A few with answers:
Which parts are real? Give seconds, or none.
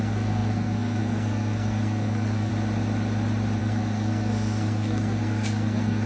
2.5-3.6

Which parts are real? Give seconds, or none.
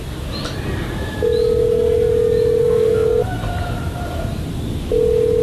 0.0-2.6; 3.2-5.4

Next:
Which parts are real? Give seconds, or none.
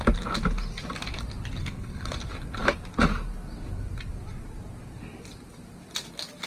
0.0-1.6; 2.1-6.5